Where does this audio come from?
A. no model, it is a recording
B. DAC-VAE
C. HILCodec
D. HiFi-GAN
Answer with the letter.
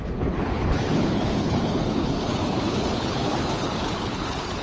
C